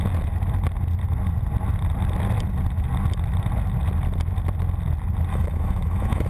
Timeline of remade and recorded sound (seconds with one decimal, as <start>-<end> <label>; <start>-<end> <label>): 0.0-5.3 recorded; 5.3-6.3 remade